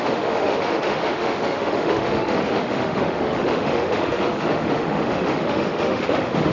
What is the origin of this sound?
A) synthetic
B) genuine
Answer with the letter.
A